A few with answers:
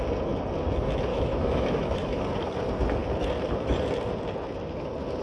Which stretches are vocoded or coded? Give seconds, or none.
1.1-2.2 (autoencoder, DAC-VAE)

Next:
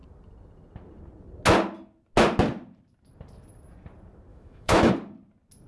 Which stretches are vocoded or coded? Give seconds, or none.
4.3-4.9 (autoencoder, DAC-VAE)

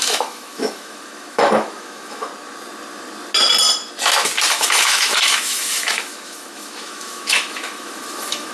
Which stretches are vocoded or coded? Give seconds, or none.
0.0-2.3 (autoencoder, DAC-VAE); 4.5-8.5

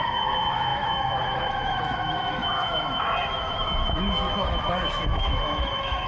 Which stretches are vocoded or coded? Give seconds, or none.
0.0-6.1 (autoencoder, DAC-VAE)

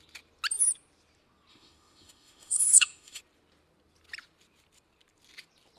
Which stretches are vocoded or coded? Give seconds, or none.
1.5-3.2 (autoencoder, DAC-VAE)